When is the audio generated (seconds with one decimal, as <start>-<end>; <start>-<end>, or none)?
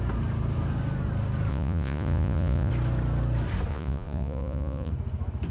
1.5-2.7; 3.7-4.9